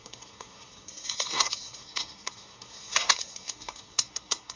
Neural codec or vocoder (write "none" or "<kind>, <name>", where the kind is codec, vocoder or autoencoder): codec, SNAC